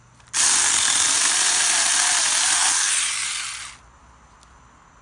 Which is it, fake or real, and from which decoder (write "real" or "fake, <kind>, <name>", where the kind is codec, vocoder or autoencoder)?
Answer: real